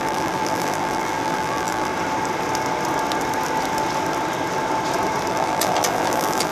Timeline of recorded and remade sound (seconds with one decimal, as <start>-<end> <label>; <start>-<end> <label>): 0.0-1.9 remade; 1.9-5.3 recorded; 5.3-6.5 remade